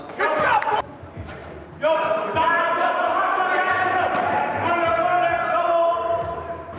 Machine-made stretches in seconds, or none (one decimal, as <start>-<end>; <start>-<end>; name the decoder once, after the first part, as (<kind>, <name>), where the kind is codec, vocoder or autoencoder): 0.0-5.1 (vocoder, BigVGAN v2); 5.7-6.8